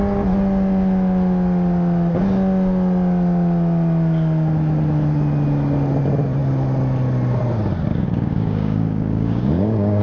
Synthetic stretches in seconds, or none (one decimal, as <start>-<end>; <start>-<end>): 7.9-10.0